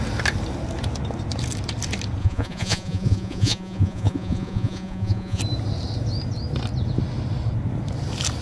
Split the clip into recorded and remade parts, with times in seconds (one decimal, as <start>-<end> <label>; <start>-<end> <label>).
0.0-2.2 recorded; 2.2-5.4 remade; 5.4-8.4 recorded